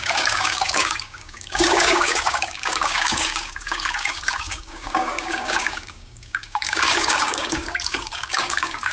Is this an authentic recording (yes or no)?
no